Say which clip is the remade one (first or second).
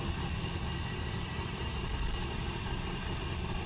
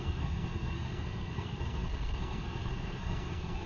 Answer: second